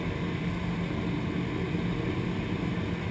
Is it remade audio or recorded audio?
recorded